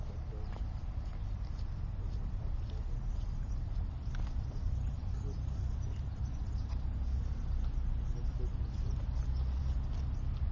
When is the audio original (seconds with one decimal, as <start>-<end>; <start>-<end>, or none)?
0.0-10.5